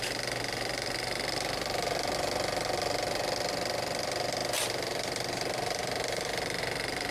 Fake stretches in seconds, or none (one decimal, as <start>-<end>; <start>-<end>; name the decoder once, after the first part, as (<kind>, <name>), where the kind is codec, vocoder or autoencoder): 4.4-6.6 (vocoder, BigVGAN v2)